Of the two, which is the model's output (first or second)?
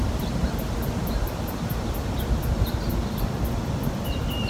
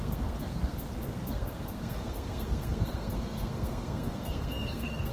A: second